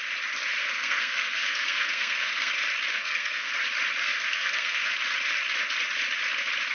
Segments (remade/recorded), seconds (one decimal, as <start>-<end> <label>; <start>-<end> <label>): 0.0-0.6 recorded; 0.6-2.5 remade; 2.5-2.9 recorded; 2.9-3.5 remade; 3.5-4.0 recorded; 4.0-4.8 remade; 4.8-6.7 recorded

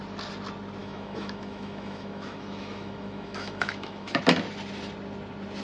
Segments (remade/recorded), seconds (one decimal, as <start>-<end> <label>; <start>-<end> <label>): 0.0-0.8 recorded; 0.8-4.2 remade; 4.2-5.6 recorded